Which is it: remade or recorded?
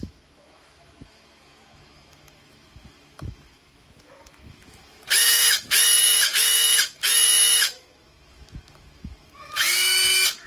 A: remade